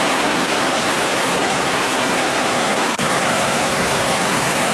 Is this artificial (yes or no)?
yes